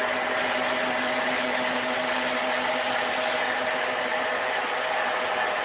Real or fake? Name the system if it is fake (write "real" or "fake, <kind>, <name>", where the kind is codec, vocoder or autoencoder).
real